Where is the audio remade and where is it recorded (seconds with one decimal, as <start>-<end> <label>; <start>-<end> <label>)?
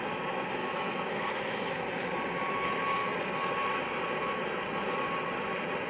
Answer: 0.0-0.6 recorded; 0.6-1.8 remade; 1.8-5.9 recorded